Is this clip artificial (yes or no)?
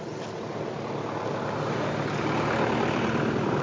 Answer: no